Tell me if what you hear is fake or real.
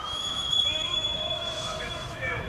fake